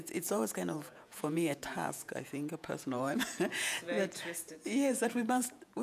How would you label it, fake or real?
fake